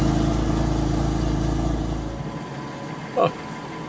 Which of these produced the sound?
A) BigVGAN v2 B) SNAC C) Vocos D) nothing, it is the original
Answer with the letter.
D